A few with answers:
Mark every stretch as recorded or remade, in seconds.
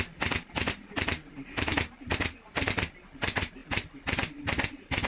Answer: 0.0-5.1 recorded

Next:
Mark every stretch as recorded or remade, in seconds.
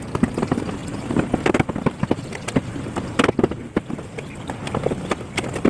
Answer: 0.0-4.6 recorded; 4.6-5.1 remade; 5.1-5.7 recorded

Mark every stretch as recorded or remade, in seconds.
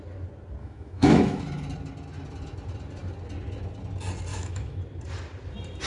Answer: 0.0-0.6 recorded; 0.6-1.4 remade; 1.4-4.3 recorded; 4.3-4.8 remade; 4.8-5.9 recorded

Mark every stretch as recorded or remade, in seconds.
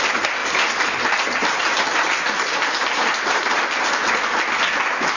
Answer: 0.0-5.2 recorded